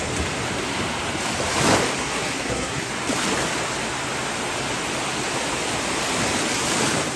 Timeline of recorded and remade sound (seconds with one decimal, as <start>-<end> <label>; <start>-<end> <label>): 0.0-2.0 recorded; 2.0-2.9 remade; 2.9-7.2 recorded